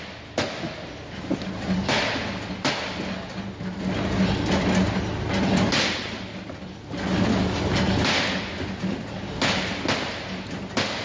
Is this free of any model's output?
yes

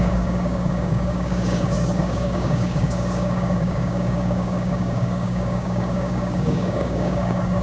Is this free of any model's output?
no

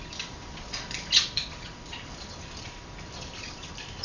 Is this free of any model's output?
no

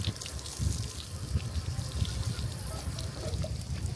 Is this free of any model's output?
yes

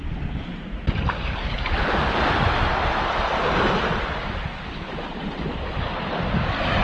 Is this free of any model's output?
yes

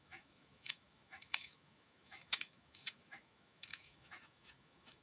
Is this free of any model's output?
no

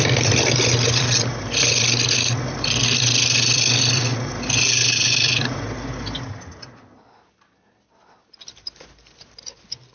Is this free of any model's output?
yes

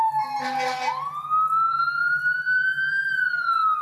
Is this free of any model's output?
yes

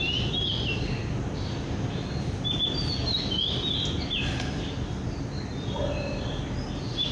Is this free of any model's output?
yes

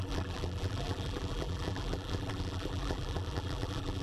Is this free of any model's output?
no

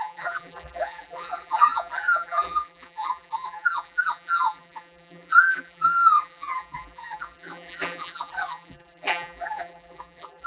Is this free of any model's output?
no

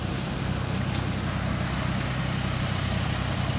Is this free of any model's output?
yes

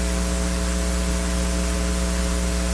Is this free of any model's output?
yes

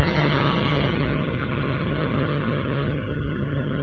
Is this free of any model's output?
no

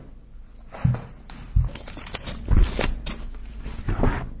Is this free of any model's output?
yes